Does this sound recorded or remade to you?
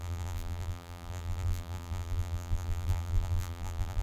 remade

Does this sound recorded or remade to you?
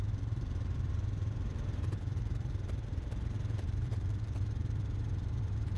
remade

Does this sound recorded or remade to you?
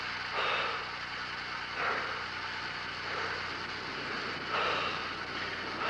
recorded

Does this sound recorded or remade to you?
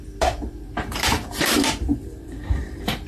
remade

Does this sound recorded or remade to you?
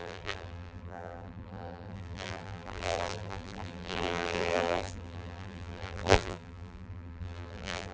remade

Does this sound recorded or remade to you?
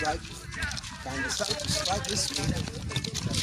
remade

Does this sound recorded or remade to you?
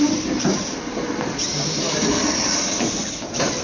remade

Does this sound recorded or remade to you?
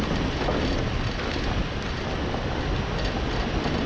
recorded